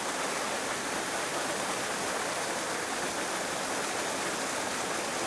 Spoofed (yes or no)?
no